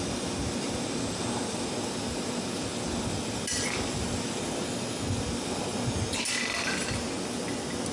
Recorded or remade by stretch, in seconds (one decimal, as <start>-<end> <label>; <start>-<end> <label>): 0.0-7.9 recorded